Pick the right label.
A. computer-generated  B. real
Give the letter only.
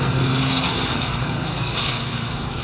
A